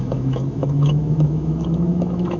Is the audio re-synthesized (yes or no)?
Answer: yes